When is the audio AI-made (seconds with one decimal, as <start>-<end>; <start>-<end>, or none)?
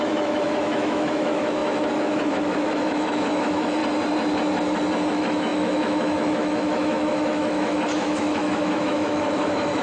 0.0-3.8; 5.1-9.8